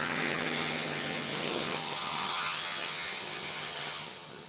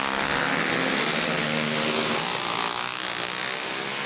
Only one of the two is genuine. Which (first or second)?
second